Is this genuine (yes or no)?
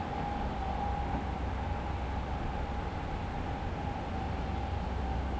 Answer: yes